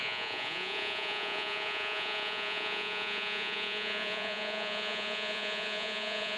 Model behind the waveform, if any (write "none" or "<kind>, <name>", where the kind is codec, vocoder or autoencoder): vocoder, Vocos